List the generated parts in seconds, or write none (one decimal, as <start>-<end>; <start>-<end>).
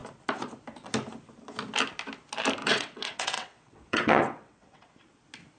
2.6-4.9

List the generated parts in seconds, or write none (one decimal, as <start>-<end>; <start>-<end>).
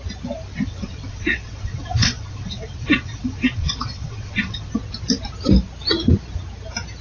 0.5-4.7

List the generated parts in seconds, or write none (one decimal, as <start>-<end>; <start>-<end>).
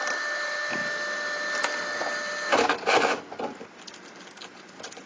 none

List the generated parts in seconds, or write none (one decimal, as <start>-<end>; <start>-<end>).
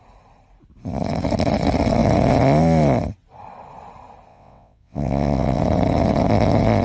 4.3-5.6